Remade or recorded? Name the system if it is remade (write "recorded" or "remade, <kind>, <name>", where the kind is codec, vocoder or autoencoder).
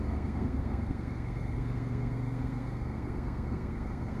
remade, codec, SNAC